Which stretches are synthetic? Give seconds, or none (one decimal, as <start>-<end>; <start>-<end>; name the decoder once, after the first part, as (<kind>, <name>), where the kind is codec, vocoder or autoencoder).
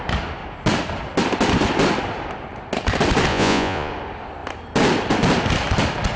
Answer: 3.3-3.9 (vocoder, Vocos)